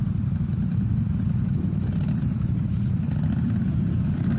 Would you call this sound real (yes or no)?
no